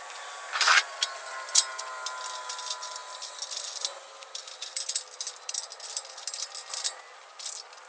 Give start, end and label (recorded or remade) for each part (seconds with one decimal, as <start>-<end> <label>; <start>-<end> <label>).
0.0-7.9 recorded